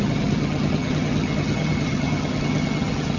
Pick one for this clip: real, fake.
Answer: fake